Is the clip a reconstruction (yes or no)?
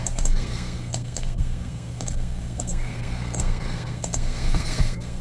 yes